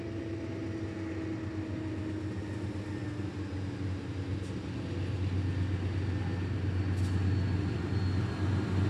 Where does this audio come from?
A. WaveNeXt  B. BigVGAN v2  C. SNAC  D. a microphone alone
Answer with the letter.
D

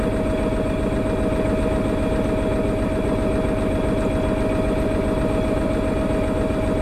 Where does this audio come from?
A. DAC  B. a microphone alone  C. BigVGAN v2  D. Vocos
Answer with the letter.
B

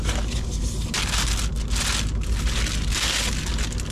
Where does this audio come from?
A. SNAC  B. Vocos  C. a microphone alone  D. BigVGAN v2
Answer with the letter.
C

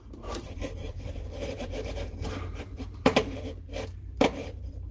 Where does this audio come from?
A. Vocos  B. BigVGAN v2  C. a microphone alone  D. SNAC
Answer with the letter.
B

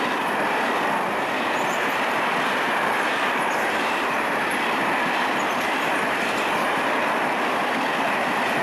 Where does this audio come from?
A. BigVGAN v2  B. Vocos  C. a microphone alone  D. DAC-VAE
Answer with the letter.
A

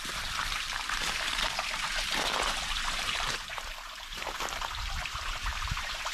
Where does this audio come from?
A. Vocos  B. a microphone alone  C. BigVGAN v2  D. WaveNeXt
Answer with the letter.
C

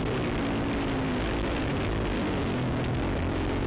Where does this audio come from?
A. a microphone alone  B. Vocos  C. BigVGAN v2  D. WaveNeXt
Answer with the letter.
A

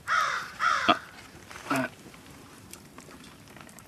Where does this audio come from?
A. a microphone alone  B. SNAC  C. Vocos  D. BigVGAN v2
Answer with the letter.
D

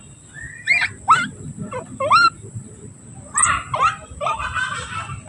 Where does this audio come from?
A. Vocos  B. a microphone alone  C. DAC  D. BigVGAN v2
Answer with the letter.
B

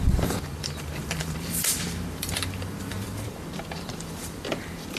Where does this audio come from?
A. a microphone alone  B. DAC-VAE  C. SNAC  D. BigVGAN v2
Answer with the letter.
D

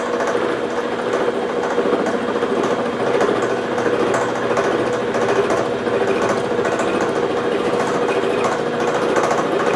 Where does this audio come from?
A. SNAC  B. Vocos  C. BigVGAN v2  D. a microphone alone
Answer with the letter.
D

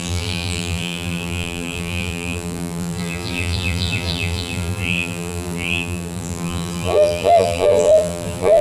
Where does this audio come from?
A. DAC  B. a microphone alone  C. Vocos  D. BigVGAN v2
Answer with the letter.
D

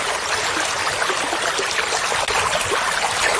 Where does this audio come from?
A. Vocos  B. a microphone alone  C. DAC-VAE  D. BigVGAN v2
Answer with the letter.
B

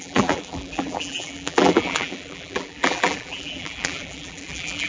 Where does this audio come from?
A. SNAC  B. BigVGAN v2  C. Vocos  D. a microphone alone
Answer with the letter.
B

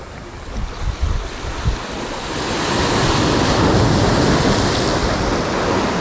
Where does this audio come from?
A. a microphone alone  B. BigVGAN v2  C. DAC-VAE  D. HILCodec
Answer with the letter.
A